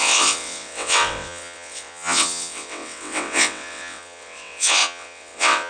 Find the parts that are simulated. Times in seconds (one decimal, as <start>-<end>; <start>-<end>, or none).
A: 0.0-5.7